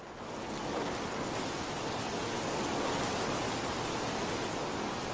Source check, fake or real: real